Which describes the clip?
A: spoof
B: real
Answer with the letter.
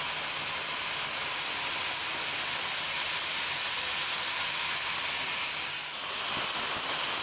B